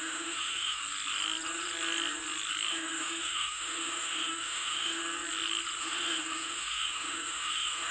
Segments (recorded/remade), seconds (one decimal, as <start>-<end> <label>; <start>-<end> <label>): 0.0-0.8 remade; 0.8-2.7 recorded; 2.7-5.0 remade; 5.0-5.8 recorded; 5.8-7.9 remade